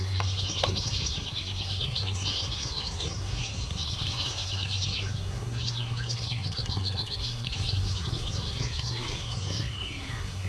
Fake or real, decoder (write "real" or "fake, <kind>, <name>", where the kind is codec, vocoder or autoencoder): fake, codec, SNAC